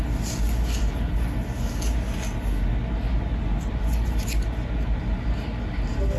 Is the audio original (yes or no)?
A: yes